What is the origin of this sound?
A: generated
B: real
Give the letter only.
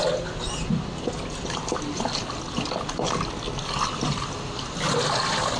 B